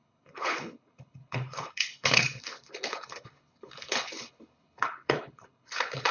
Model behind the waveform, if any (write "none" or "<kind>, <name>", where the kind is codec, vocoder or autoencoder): codec, HILCodec